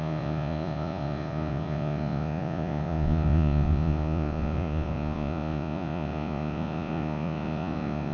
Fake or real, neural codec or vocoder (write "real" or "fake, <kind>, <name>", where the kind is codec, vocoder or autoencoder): fake, vocoder, Vocos